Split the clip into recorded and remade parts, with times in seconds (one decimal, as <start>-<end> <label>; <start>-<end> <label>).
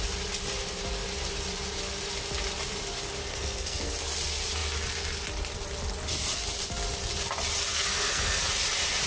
0.0-3.2 recorded; 3.2-3.9 remade; 3.9-7.7 recorded; 7.7-8.4 remade; 8.4-9.1 recorded